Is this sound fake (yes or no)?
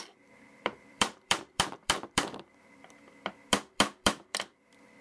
yes